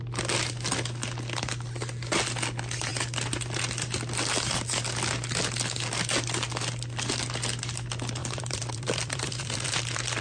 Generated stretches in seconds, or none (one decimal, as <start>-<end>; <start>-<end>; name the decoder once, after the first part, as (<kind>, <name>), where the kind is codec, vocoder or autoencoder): 8.2-10.2 (vocoder, BigVGAN v2)